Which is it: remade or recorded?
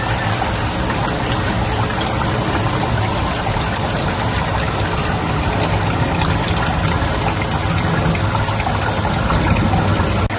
recorded